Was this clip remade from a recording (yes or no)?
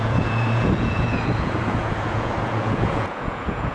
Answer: yes